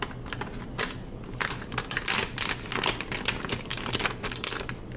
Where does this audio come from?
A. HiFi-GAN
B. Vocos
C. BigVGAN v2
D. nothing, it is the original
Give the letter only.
D